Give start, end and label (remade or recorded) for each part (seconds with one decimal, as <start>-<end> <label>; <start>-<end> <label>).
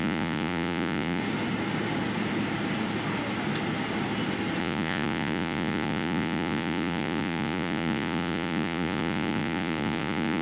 0.0-1.2 remade; 1.2-4.6 recorded; 4.6-10.4 remade